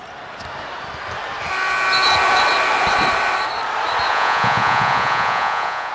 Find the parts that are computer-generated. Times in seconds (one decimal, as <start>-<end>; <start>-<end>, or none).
4.1-5.9